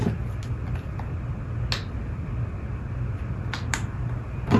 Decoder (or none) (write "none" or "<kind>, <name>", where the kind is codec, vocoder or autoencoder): none